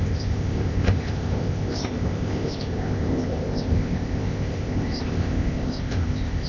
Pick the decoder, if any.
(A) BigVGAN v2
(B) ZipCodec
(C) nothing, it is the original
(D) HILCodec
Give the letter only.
B